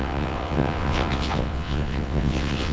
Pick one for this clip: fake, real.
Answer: fake